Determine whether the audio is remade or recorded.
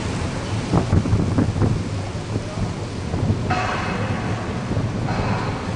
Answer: recorded